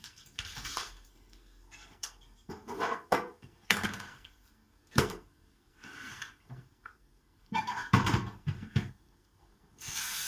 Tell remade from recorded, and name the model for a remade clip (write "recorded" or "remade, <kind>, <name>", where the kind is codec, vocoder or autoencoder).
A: remade, codec, SNAC